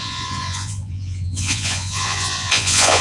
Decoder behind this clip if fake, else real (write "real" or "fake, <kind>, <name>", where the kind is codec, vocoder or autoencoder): fake, vocoder, Vocos